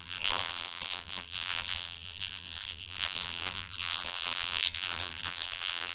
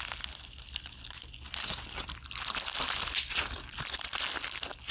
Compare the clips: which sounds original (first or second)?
second